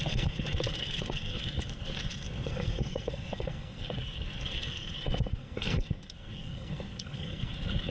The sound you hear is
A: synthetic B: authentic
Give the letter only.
A